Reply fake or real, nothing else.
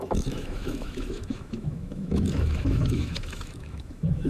fake